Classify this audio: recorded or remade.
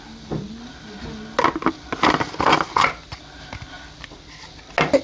recorded